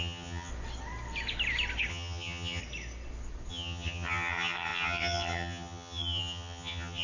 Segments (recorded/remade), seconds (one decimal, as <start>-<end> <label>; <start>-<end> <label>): 0.0-0.5 remade; 0.5-1.9 recorded; 1.9-2.6 remade; 2.6-3.5 recorded; 3.5-7.0 remade